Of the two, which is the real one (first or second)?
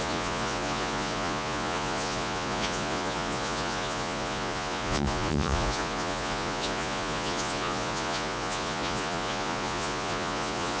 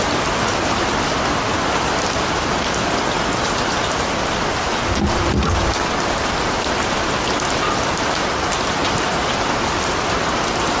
second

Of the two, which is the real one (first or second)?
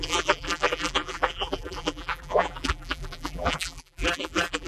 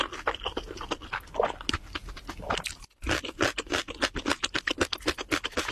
second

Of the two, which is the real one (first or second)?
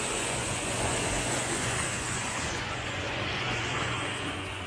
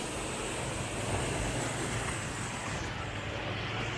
second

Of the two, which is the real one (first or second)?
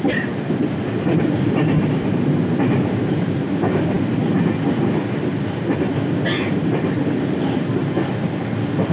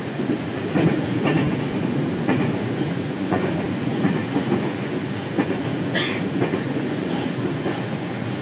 first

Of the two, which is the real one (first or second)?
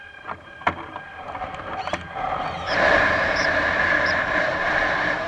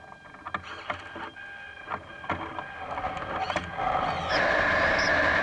second